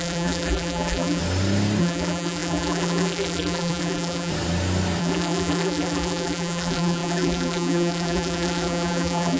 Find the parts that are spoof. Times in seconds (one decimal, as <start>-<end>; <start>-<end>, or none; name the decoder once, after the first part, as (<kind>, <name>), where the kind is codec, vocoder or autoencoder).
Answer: 0.0-1.2 (vocoder, BigVGAN v2); 1.8-4.3; 5.0-9.4